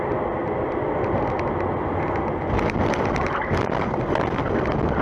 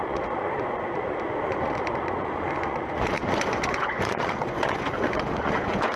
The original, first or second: first